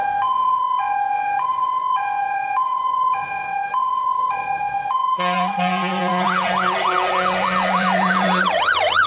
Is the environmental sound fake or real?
fake